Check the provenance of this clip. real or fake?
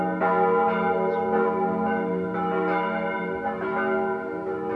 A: real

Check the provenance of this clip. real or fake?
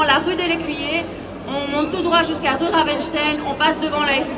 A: real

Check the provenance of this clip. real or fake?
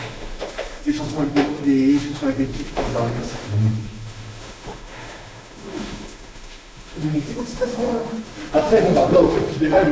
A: fake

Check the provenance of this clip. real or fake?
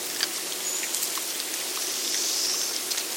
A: real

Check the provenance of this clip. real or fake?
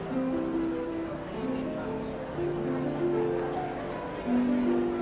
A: real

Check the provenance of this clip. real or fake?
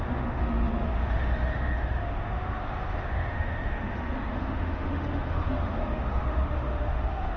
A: fake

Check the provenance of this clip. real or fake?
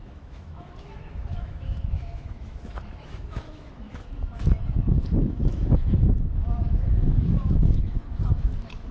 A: fake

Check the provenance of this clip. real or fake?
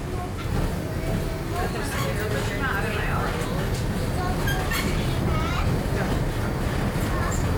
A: real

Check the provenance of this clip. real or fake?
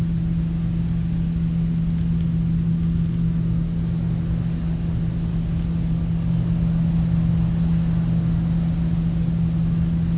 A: real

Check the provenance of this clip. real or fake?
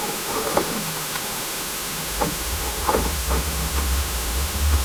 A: fake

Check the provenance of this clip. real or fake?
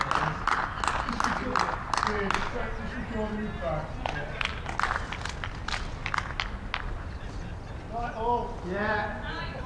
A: real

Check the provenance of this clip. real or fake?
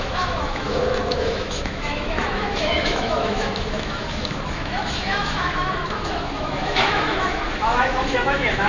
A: fake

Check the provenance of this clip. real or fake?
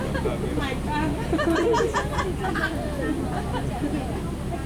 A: real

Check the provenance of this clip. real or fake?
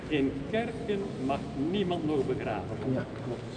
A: real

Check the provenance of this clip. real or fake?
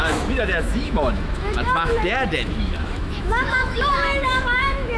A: fake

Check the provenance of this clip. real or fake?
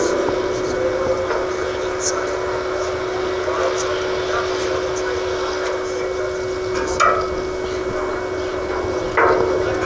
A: real